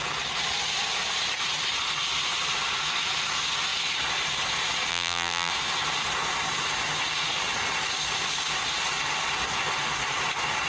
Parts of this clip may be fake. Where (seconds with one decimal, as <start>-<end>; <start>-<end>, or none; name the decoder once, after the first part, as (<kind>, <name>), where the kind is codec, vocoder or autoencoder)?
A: 4.9-5.5 (vocoder, BigVGAN v2)